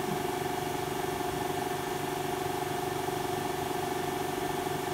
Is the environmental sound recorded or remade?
recorded